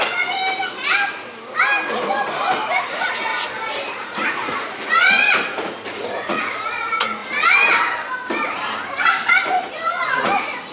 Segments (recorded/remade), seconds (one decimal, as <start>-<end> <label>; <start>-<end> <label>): 0.0-0.4 remade; 0.4-2.8 recorded; 2.8-3.3 remade; 3.3-3.9 recorded; 3.9-7.2 remade; 7.2-9.3 recorded; 9.3-10.7 remade